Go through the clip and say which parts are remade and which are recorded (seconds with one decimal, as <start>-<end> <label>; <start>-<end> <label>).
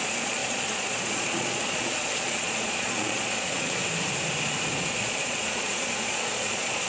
0.0-3.8 remade; 3.8-4.8 recorded; 4.8-6.9 remade